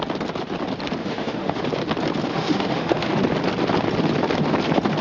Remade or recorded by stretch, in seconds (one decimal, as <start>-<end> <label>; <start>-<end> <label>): 0.0-1.0 recorded; 1.0-1.6 remade; 1.6-2.3 recorded; 2.3-3.1 remade; 3.1-5.0 recorded